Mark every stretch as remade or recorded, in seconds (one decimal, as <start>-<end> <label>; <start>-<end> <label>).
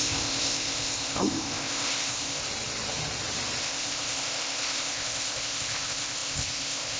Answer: 0.0-2.4 remade; 2.4-3.6 recorded; 3.6-7.0 remade